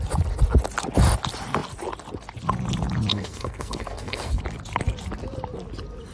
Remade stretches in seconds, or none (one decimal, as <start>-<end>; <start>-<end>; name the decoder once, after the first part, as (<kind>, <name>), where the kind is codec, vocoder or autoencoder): 3.1-4.4 (codec, SNAC)